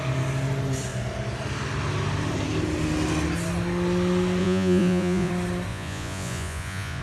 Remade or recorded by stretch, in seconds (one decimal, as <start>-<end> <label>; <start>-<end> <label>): 0.0-4.4 recorded; 4.4-5.3 remade; 5.3-5.7 recorded; 5.7-7.0 remade

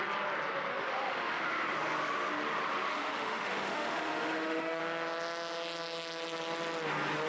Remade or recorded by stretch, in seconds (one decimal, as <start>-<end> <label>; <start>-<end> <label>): 0.0-0.7 recorded; 0.7-1.4 remade; 1.4-2.9 recorded; 2.9-4.8 remade; 4.8-7.3 recorded

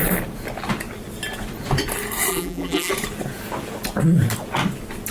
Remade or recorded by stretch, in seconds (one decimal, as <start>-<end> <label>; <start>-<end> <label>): 0.0-2.3 recorded; 2.3-2.9 remade; 2.9-5.1 recorded

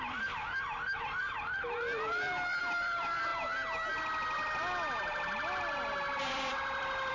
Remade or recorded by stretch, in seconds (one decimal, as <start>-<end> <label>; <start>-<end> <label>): 0.0-3.3 remade; 3.3-6.2 recorded; 6.2-7.1 remade

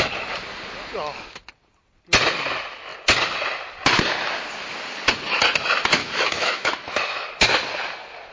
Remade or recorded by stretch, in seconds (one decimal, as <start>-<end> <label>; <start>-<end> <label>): 0.0-6.0 recorded; 6.0-7.3 remade; 7.3-8.3 recorded

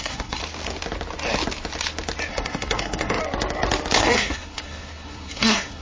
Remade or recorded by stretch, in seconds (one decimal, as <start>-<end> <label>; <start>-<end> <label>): 0.0-0.4 remade; 0.4-2.3 recorded; 2.3-3.2 remade; 3.2-4.0 recorded; 4.0-5.8 remade

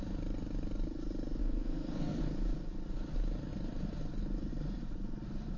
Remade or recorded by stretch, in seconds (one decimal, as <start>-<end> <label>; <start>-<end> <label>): 0.0-1.4 recorded; 1.4-2.2 remade; 2.2-5.6 recorded